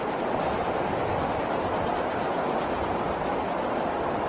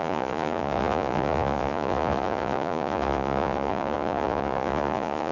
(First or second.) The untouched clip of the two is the first